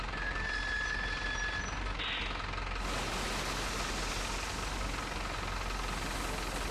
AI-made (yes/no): no